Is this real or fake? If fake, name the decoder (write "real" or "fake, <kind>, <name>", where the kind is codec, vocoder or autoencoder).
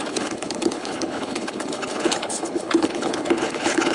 fake, codec, HILCodec